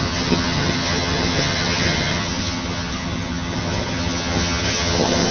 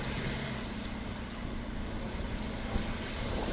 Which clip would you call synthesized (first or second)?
first